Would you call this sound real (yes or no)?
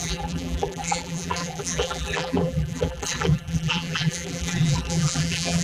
no